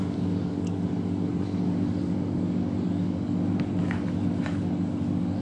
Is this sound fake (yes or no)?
yes